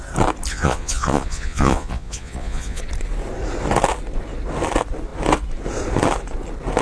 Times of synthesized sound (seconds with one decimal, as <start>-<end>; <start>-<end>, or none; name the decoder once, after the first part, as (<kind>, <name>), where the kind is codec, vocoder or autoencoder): 0.5-2.8 (vocoder, Vocos)

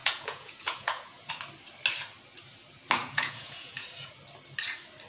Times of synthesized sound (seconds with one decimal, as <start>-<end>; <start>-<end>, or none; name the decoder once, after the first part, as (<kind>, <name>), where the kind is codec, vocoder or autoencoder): 0.0-1.3 (vocoder, Vocos); 3.0-4.1

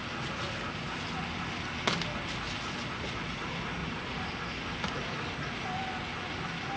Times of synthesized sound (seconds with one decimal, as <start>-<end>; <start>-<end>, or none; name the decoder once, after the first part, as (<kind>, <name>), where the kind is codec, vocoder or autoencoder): 3.8-4.3 (vocoder, Vocos)

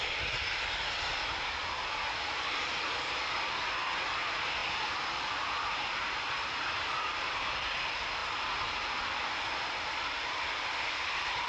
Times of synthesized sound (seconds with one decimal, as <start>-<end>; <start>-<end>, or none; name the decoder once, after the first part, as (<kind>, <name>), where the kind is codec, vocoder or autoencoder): none

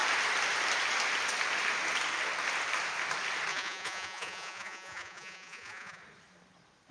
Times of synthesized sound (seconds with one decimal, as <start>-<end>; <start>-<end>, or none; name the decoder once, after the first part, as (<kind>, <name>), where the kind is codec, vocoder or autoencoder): 3.5-6.0 (vocoder, Vocos)

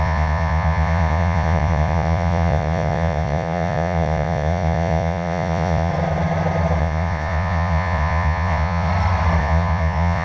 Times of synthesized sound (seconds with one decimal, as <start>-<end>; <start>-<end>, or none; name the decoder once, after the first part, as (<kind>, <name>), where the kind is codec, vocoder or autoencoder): 0.0-5.9 (vocoder, Vocos); 6.8-8.9; 9.4-10.2

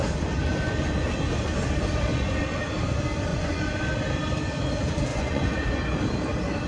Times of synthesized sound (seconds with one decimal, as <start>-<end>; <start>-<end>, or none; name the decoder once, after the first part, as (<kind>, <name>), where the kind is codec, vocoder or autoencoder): 2.1-2.6 (vocoder, Vocos); 3.3-3.8; 5.1-5.8